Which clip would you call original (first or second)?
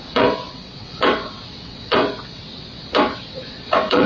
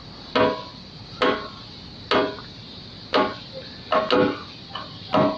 second